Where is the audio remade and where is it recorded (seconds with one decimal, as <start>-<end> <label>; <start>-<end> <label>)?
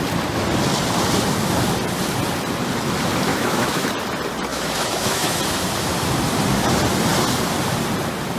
0.0-3.3 recorded; 3.3-3.9 remade; 3.9-4.5 recorded; 4.5-5.4 remade; 5.4-8.4 recorded